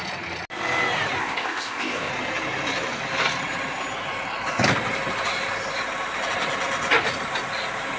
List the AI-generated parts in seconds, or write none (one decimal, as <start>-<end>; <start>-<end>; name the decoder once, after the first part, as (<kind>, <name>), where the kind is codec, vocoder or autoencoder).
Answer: 1.2-2.1 (codec, ZipCodec)